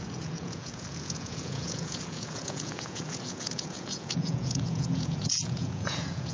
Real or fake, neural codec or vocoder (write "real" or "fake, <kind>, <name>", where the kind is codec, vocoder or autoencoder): fake, vocoder, Vocos